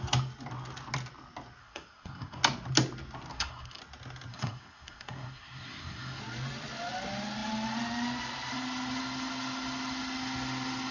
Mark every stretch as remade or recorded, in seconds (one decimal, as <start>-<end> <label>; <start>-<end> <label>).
0.0-1.6 recorded; 1.6-2.4 remade; 2.4-3.3 recorded; 3.3-3.8 remade; 3.8-4.3 recorded; 4.3-6.2 remade; 6.2-10.9 recorded